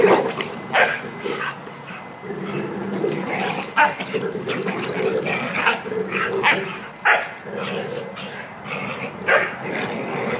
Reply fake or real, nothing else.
real